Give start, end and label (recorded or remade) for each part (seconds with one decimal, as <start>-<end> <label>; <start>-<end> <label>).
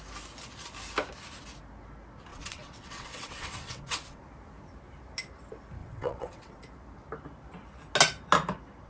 0.0-2.3 recorded; 2.3-4.2 remade; 4.2-5.8 recorded; 5.8-6.6 remade; 6.6-8.9 recorded